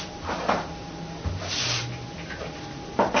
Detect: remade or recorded recorded